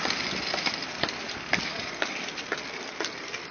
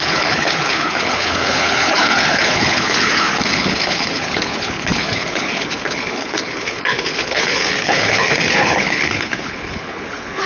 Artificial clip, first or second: second